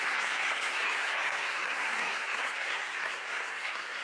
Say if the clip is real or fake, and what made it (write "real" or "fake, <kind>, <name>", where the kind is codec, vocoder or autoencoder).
fake, codec, SNAC